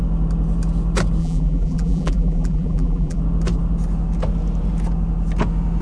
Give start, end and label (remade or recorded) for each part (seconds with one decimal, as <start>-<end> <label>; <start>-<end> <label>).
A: 0.0-1.2 recorded; 1.2-3.2 remade; 3.2-5.8 recorded